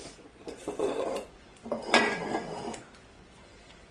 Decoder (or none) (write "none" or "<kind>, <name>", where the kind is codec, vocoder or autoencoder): vocoder, Vocos